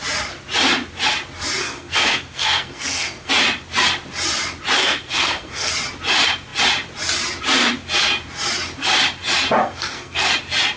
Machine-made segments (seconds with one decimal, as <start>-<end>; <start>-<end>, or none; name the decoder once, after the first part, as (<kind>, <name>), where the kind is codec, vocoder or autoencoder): 1.6-3.3 (codec, SNAC); 4.8-5.7; 9.6-10.3